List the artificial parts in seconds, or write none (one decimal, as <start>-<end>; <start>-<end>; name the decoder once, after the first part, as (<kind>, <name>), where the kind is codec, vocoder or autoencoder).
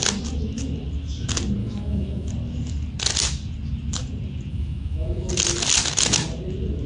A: 1.6-2.3 (autoencoder, DAC-VAE); 4.5-5.3